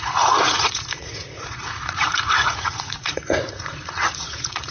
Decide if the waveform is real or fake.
fake